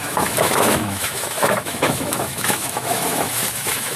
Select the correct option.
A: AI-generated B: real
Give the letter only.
A